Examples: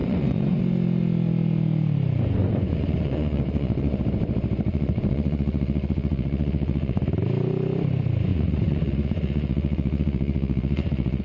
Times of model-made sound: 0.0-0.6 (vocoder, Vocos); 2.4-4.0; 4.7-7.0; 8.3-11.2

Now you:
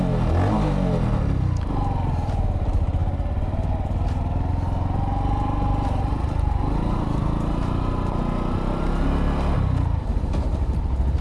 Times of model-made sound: none